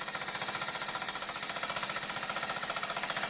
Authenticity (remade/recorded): recorded